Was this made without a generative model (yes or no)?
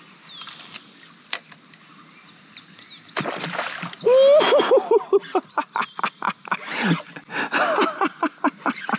yes